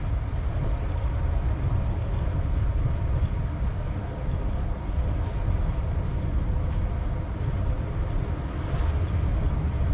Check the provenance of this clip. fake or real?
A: real